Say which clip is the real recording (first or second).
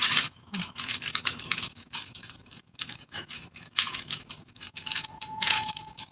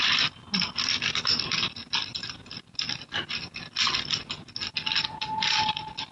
second